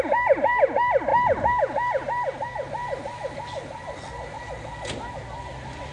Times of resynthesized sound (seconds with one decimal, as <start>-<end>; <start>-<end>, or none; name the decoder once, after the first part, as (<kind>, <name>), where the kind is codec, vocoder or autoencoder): none